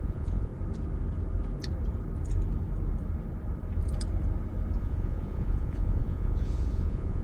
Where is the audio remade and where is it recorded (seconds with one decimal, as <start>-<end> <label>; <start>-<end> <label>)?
0.0-0.5 remade; 0.5-4.8 recorded; 4.8-7.2 remade